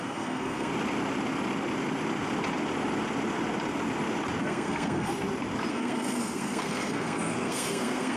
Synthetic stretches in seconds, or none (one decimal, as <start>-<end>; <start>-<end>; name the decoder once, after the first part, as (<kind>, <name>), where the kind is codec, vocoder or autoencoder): 0.0-0.7 (codec, SNAC); 4.4-5.1; 5.7-8.2